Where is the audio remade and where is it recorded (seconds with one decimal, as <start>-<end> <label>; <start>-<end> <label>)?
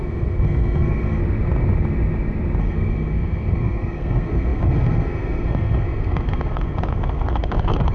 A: 0.0-1.2 remade; 1.2-2.6 recorded; 2.6-7.9 remade